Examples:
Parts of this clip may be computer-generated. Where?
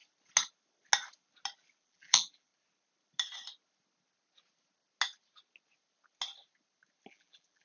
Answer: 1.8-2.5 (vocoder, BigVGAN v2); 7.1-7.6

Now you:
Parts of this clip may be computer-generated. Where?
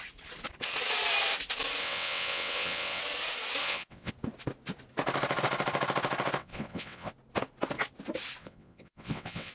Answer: 1.8-3.0 (vocoder, WaveNeXt); 3.6-4.1; 6.4-7.1; 8.4-9.5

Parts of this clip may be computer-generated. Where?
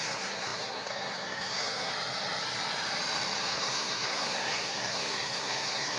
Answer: 0.0-1.9 (codec, SNAC); 3.4-6.0